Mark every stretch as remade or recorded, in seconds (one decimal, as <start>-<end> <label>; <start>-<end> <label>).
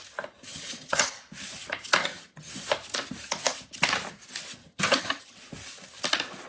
0.0-0.5 recorded; 0.5-1.2 remade; 1.2-2.0 recorded; 2.0-2.5 remade; 2.5-4.6 recorded; 4.6-5.4 remade; 5.4-6.5 recorded